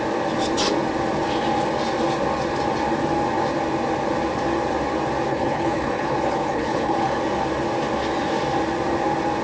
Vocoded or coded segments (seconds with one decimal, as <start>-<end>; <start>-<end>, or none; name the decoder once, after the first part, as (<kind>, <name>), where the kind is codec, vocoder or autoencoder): 5.3-7.2 (codec, HILCodec)